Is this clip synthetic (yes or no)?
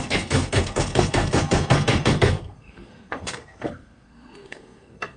yes